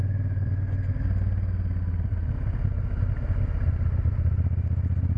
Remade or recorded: recorded